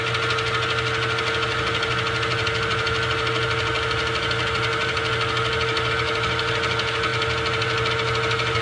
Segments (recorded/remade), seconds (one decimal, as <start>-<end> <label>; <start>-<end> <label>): 0.0-8.6 recorded